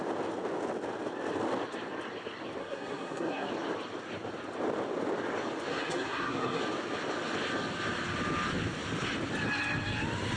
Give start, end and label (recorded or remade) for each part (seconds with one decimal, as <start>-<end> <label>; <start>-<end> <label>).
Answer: 0.0-2.6 recorded; 2.6-3.5 remade; 3.5-5.7 recorded; 5.7-6.6 remade; 6.6-10.4 recorded